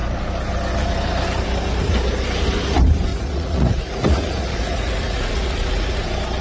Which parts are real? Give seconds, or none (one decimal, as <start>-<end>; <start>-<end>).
0.0-3.1; 6.0-6.4